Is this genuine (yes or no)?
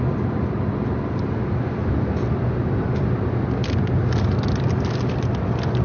yes